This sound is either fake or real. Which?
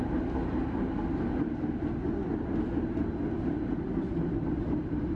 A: real